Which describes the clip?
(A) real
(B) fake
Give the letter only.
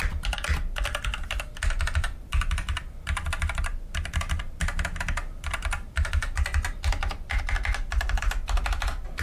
A